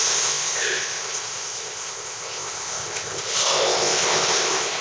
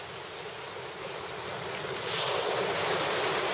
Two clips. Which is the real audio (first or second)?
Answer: second